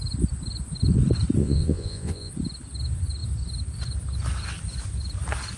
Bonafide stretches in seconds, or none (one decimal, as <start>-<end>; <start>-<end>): 0.0-1.4; 2.3-5.6